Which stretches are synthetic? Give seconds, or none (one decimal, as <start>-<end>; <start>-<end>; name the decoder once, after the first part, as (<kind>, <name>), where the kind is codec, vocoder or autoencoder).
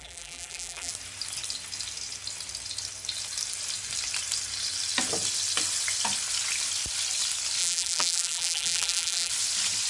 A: 0.0-0.9 (vocoder, BigVGAN v2); 7.6-9.3